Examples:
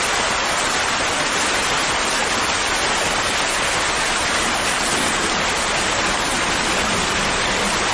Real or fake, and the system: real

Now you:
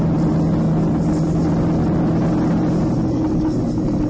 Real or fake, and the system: real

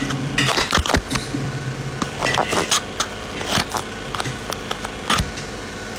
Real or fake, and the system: real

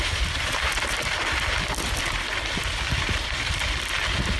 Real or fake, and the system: fake, vocoder, BigVGAN v2